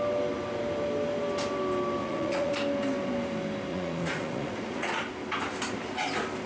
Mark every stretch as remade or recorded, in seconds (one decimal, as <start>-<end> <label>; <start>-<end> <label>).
0.0-2.0 recorded; 2.0-2.5 remade; 2.5-3.7 recorded; 3.7-5.0 remade; 5.0-6.5 recorded